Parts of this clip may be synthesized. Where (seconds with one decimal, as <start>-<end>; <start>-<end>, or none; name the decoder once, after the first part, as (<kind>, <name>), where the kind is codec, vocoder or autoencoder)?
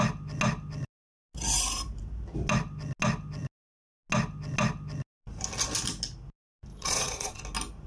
6.7-7.4 (vocoder, Vocos)